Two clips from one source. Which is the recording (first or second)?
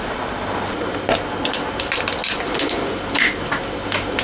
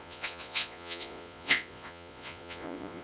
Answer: first